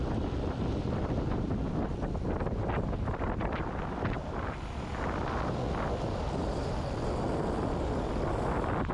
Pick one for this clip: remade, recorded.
recorded